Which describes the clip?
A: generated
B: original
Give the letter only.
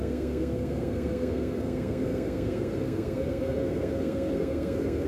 A